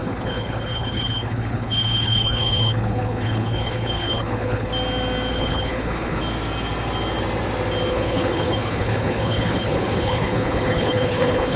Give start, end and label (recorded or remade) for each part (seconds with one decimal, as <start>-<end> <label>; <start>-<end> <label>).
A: 0.0-4.7 remade; 4.7-5.3 recorded; 5.3-6.2 remade; 6.2-7.9 recorded; 7.9-11.6 remade